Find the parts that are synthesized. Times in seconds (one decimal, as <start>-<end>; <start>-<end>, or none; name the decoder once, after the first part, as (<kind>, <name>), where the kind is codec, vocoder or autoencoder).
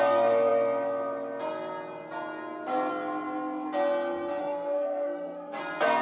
4.4-5.6 (codec, SNAC)